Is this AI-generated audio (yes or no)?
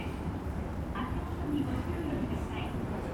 yes